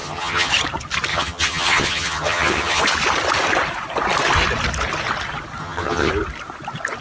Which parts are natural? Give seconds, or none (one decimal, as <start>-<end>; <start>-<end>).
0.5-1.1; 2.8-5.6; 6.1-7.0